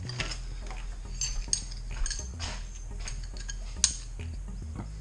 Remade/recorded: recorded